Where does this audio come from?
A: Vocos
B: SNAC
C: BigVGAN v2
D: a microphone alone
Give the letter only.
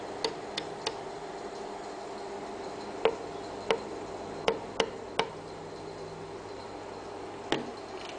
D